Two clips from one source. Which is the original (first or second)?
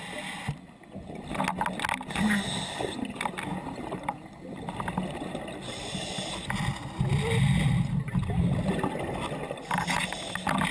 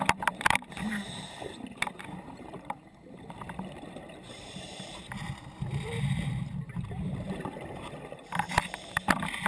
first